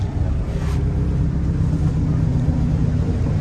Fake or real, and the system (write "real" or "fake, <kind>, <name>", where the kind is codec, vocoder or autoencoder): real